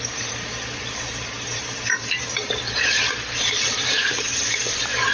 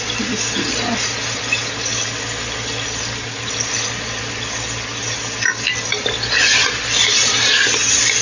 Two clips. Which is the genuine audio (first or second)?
second